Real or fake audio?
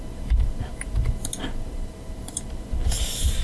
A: fake